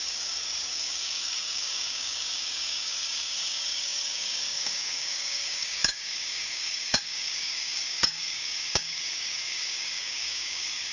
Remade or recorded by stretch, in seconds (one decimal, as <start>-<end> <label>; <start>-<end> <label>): 0.0-10.9 remade